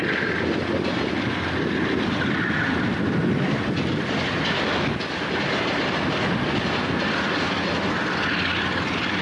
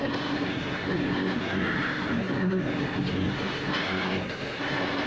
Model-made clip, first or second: second